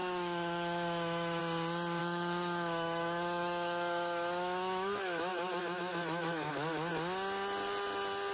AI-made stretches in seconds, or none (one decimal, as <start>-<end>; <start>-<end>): 0.0-1.4; 2.0-6.5